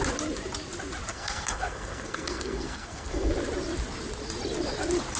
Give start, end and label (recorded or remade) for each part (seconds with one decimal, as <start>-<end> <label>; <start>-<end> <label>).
0.0-1.1 recorded; 1.1-3.3 remade; 3.3-5.2 recorded